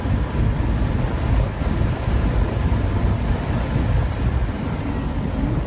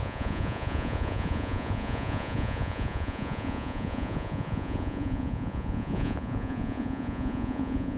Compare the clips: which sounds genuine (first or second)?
first